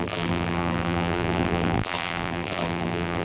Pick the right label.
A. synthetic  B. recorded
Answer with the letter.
A